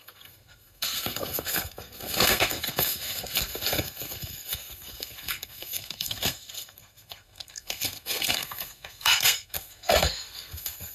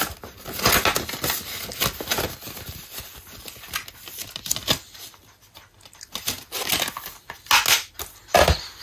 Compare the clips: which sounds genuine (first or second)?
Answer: second